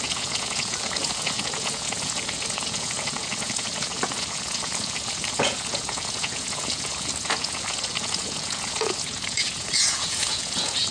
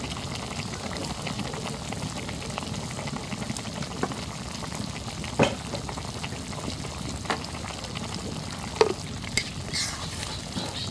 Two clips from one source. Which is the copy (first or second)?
first